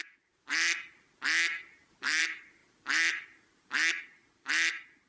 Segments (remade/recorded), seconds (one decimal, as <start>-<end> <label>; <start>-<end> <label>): 0.0-5.1 recorded

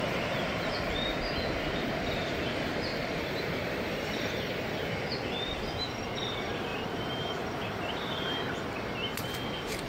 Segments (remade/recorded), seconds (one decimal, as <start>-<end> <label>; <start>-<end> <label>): 0.0-2.9 recorded; 2.9-4.5 remade; 4.5-6.7 recorded; 6.7-8.5 remade; 8.5-9.9 recorded